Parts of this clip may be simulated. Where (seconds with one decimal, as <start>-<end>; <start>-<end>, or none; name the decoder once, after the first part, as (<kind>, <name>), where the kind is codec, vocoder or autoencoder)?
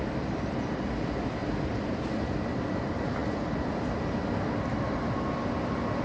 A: 1.4-2.6 (vocoder, BigVGAN v2); 3.2-3.7